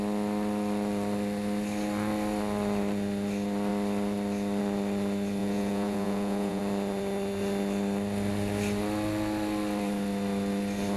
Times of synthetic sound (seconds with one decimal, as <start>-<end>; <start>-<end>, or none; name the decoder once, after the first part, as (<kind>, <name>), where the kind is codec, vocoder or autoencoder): 5.4-6.6 (vocoder, Vocos)